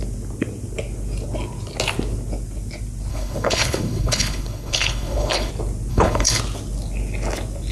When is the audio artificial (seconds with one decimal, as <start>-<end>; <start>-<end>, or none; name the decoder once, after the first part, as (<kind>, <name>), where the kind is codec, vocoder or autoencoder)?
3.1-5.5 (codec, HILCodec); 5.9-6.4